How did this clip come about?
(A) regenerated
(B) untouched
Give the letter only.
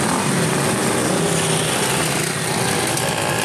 B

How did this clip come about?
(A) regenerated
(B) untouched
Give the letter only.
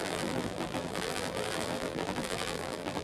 A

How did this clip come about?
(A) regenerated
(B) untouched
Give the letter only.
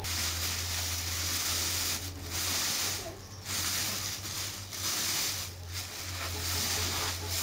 B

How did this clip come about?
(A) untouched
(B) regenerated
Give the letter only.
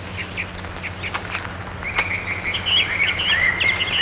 A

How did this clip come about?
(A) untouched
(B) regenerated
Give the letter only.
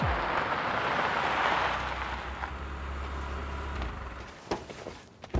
A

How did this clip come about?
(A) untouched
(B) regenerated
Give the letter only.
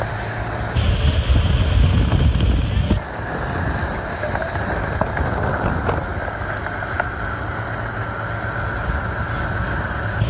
A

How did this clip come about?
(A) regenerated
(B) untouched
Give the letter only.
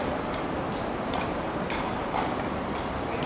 A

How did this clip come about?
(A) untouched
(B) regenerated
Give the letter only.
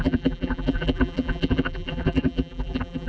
B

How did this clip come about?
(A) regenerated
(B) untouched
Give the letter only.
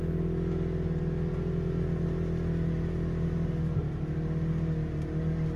B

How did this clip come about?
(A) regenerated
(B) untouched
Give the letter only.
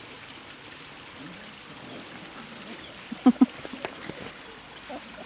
B